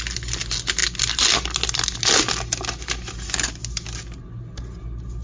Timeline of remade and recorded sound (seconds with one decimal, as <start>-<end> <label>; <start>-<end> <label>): 0.0-5.2 recorded